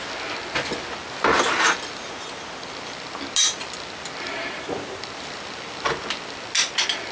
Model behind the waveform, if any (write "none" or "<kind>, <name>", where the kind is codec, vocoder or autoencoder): none